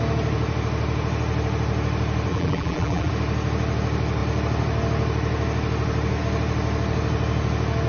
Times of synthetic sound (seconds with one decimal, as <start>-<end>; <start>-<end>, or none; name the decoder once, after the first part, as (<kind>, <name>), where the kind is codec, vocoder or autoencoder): 2.3-3.1 (vocoder, BigVGAN v2)